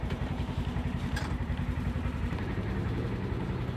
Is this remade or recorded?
remade